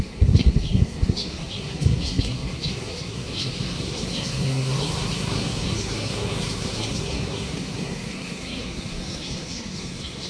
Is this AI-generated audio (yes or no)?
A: yes